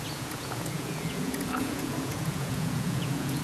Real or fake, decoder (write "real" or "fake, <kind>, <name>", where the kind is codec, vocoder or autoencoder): fake, vocoder, Vocos